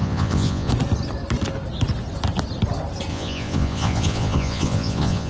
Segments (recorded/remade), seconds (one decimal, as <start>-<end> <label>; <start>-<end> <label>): 0.0-0.7 remade; 0.7-3.1 recorded; 3.1-5.3 remade

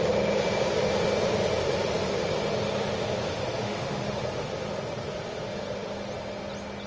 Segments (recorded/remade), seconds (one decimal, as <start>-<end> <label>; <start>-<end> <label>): 0.0-3.6 recorded; 3.6-4.2 remade; 4.2-6.9 recorded

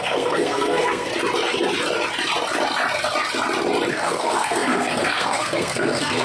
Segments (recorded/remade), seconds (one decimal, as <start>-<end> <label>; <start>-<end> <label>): 0.0-1.1 remade; 1.1-3.9 recorded; 3.9-6.2 remade

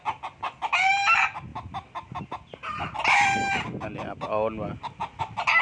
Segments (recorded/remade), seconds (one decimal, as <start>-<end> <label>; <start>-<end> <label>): 0.0-5.6 recorded